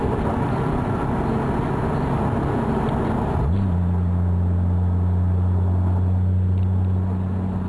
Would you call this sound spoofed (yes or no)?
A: no